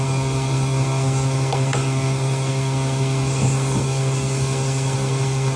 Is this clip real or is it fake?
fake